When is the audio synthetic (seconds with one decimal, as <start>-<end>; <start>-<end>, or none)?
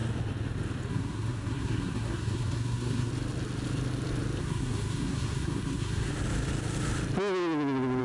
0.9-3.1; 4.4-6.1